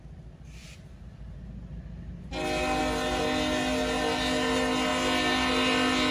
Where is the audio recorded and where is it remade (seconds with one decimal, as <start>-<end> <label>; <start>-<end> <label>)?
0.0-6.1 recorded